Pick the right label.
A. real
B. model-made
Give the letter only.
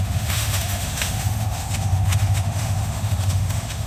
B